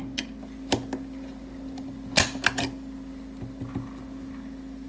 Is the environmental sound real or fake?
real